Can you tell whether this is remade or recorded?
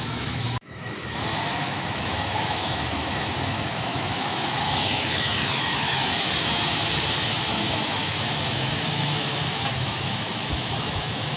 remade